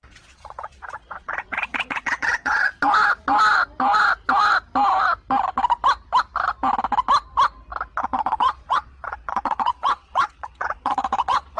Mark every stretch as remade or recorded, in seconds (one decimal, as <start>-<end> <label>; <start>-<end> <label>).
0.0-2.7 remade; 2.7-8.0 recorded; 8.0-11.6 remade